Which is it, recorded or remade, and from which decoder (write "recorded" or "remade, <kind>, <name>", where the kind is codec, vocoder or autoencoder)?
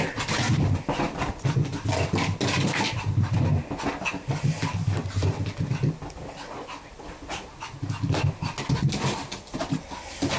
recorded